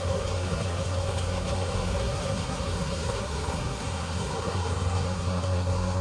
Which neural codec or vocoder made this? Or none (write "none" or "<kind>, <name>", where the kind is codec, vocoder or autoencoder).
codec, SNAC